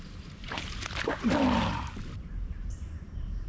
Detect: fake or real fake